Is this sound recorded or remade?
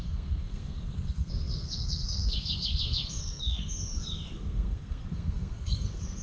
remade